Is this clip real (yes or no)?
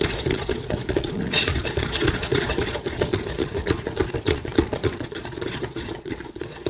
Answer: no